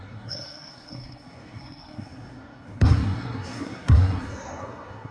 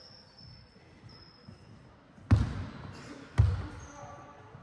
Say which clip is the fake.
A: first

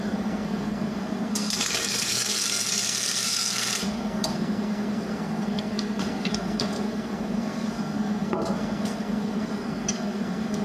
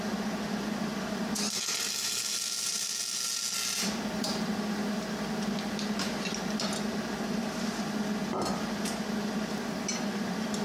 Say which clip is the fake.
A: first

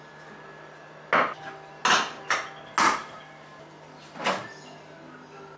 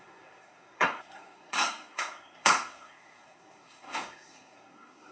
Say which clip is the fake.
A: second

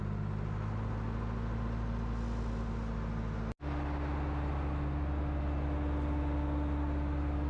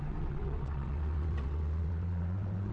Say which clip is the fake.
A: second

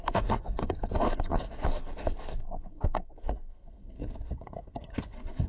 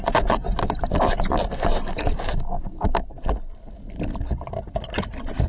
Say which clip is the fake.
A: first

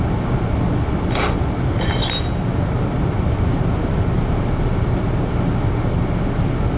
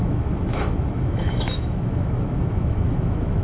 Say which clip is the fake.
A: second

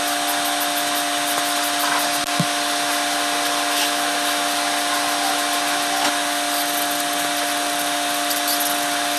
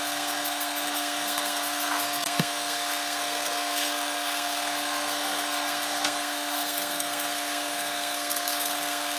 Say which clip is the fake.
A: second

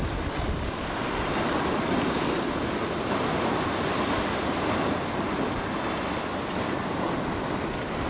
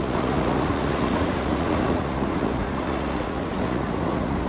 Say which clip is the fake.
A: second